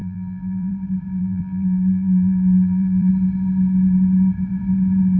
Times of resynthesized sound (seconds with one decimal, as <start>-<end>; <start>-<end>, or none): 0.0-0.7; 1.2-3.1